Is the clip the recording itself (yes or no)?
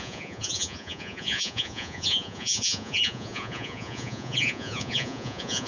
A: no